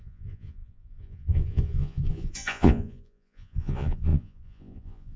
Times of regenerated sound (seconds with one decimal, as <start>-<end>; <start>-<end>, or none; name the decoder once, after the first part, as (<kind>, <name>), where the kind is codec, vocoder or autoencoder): 0.0-5.2 (vocoder, Vocos)